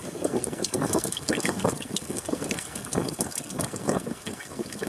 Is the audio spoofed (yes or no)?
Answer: yes